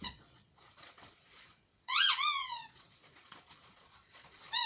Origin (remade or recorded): remade